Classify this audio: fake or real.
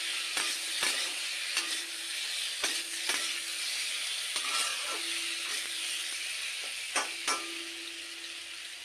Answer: real